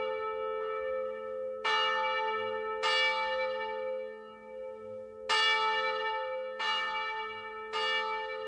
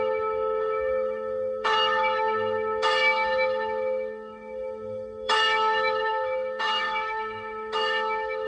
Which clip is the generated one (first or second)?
second